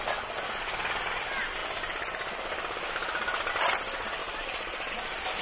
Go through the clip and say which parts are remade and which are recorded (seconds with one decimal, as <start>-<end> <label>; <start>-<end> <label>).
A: 0.0-4.2 recorded; 4.2-4.9 remade; 4.9-5.4 recorded